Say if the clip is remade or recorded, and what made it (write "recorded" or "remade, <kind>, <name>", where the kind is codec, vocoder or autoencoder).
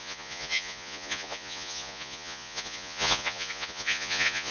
remade, vocoder, Vocos